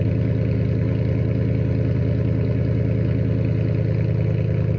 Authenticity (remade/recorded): recorded